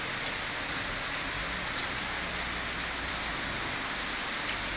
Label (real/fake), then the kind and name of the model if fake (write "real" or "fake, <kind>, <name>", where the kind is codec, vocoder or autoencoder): real